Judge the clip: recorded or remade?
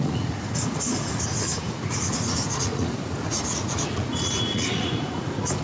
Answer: remade